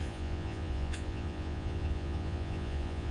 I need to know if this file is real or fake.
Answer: fake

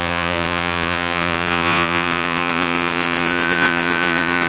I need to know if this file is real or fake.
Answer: fake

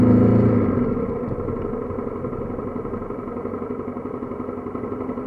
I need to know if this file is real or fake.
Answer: real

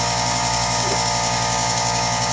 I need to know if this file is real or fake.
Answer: fake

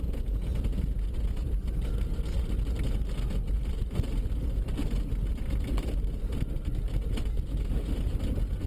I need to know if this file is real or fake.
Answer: real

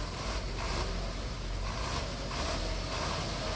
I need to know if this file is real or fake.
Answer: real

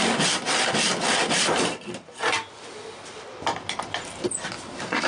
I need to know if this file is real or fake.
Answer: real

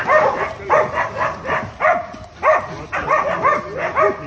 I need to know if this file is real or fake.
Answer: real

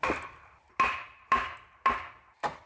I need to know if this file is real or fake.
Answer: real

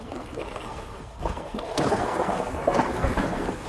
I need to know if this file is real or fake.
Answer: fake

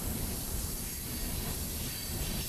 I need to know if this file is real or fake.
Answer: fake